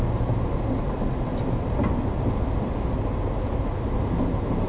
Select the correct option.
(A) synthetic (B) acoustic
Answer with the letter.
B